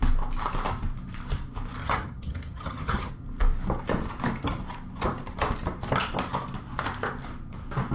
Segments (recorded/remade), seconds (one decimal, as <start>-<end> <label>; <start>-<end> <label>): 0.0-1.8 recorded; 1.8-3.1 remade; 3.1-7.9 recorded